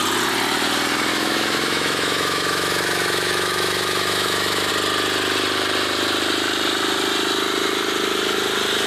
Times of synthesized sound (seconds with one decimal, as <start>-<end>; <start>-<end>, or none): 1.1-4.7